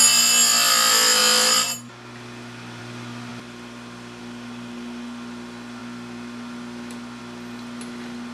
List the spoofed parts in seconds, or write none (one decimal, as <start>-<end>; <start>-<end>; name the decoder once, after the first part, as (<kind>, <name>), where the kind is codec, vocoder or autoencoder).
none